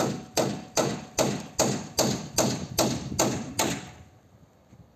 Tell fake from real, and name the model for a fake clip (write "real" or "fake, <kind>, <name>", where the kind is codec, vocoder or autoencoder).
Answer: real